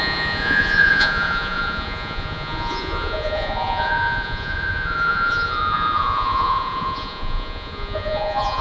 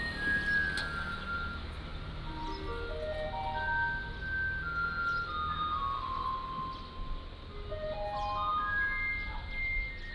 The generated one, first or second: first